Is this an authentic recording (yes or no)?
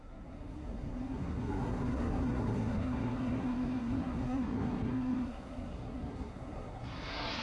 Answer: no